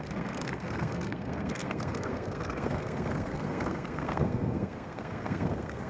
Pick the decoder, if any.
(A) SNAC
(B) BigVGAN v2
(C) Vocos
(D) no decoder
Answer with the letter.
A